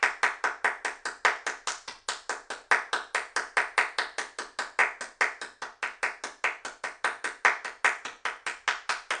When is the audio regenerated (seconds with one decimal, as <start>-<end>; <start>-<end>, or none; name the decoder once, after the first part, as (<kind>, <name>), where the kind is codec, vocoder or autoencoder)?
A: none